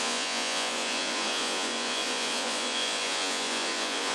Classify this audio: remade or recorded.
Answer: remade